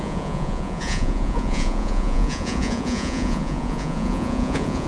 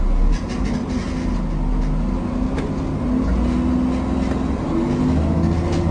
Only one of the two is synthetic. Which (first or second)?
first